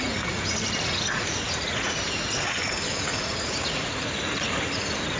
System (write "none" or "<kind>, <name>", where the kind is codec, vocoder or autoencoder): vocoder, Vocos